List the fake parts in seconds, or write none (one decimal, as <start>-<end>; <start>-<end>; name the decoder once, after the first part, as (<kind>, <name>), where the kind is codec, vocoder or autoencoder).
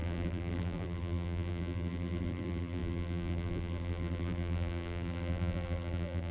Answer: 0.0-6.3 (vocoder, BigVGAN v2)